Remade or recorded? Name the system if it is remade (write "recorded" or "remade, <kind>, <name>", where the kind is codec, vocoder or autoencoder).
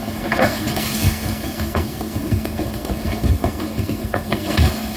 remade, codec, SNAC